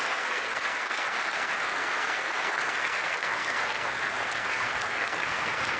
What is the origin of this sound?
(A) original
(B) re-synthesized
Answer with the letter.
B